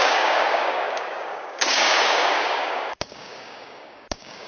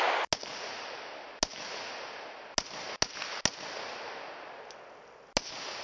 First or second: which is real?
second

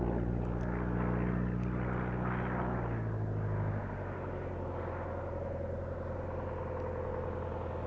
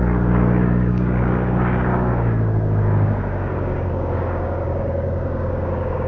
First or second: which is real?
first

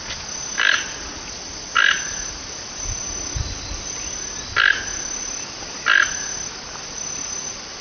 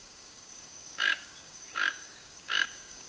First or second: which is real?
first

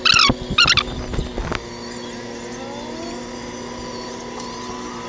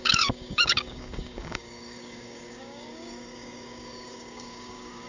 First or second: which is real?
first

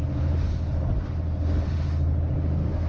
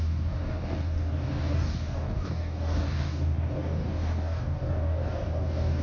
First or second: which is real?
first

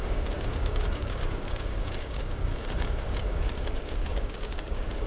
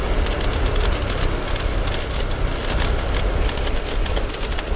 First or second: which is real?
second